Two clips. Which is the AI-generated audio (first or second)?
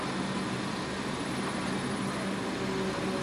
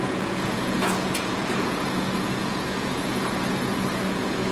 second